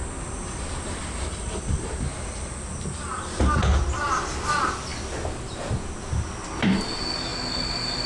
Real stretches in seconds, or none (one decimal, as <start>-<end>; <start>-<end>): 2.0-8.1